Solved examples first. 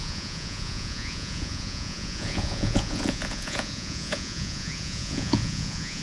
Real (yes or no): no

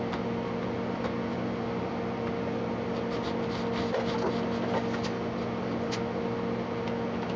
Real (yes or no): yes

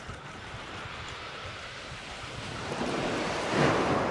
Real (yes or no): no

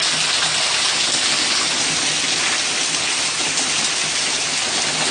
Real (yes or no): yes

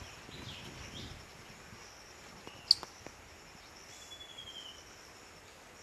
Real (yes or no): yes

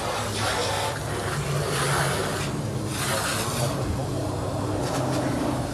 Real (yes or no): yes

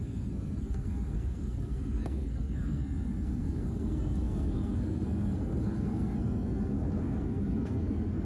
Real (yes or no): no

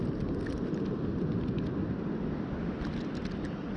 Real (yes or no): yes